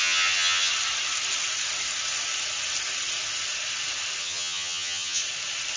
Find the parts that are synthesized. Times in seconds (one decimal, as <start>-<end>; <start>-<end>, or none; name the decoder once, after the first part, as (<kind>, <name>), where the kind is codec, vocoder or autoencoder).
0.0-0.7 (vocoder, HiFi-GAN); 4.2-5.2